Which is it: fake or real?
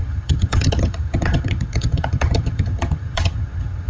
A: fake